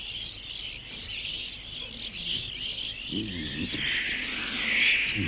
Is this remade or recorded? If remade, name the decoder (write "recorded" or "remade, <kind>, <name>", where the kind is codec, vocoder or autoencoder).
recorded